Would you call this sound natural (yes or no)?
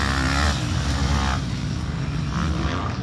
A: yes